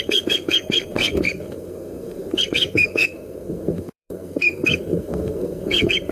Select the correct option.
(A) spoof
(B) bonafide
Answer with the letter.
A